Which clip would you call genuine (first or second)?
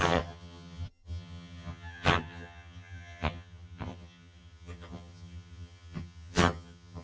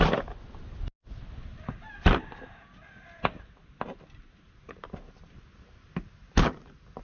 second